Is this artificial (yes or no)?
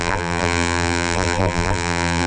yes